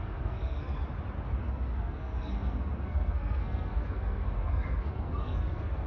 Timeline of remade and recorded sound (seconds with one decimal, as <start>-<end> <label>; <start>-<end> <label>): 0.0-0.8 remade; 0.8-1.4 recorded; 1.4-5.9 remade